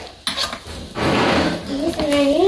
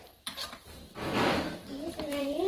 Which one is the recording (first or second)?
first